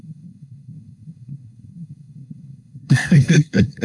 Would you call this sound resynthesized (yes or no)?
yes